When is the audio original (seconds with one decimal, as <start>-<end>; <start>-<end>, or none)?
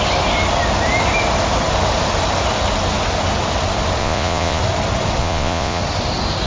0.0-4.0; 4.6-5.2; 5.8-6.5